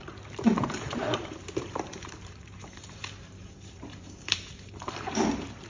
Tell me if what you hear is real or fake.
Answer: fake